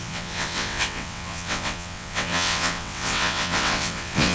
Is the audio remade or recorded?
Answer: remade